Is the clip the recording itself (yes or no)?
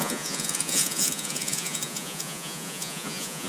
no